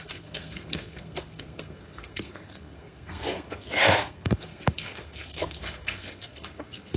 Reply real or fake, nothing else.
fake